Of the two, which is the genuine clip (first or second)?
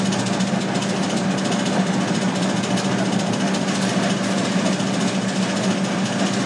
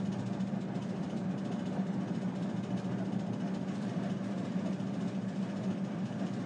first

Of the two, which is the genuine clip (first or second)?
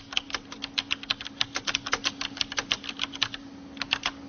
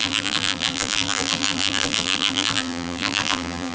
first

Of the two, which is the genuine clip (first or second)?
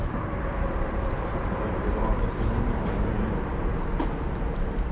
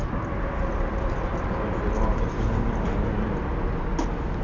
second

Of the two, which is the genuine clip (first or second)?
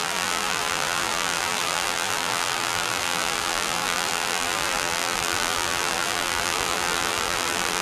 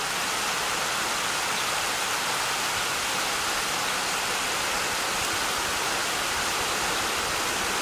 second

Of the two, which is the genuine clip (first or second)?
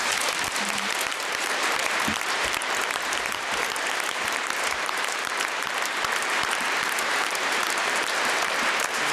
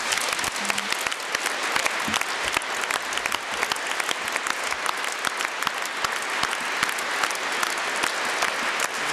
second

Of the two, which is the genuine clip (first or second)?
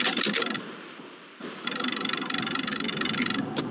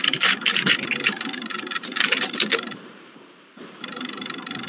first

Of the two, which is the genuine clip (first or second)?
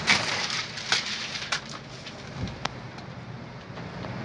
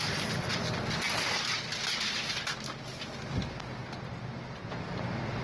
second